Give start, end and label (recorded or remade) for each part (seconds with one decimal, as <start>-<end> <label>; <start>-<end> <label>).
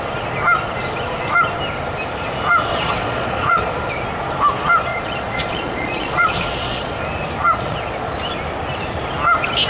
0.0-2.7 recorded; 2.7-3.7 remade; 3.7-4.9 recorded; 4.9-7.0 remade; 7.0-7.4 recorded; 7.4-8.1 remade; 8.1-9.7 recorded